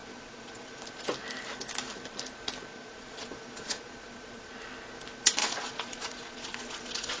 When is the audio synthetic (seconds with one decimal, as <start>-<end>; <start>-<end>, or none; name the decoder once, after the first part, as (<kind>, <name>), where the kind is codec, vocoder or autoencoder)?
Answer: 0.0-0.8 (vocoder, Vocos); 2.7-4.5; 5.4-7.2